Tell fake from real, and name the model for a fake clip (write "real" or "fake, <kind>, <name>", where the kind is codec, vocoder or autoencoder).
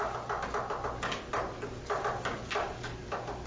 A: real